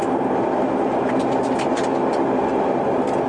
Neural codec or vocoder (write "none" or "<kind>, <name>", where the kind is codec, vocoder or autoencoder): none